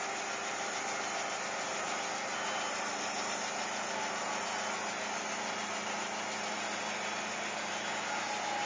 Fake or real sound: real